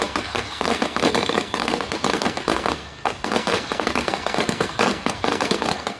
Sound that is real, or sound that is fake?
fake